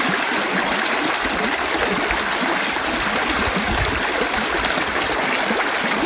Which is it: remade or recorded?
recorded